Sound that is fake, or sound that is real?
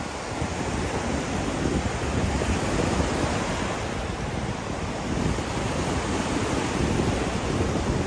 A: real